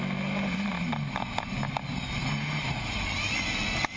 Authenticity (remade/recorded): recorded